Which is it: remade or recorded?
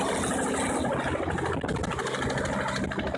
recorded